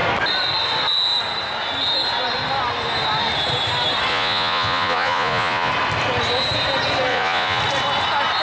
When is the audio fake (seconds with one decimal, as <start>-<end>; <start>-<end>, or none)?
4.1-5.7; 7.1-7.6